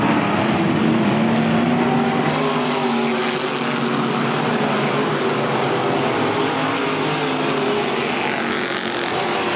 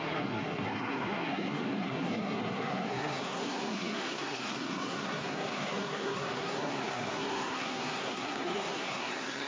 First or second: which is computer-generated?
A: second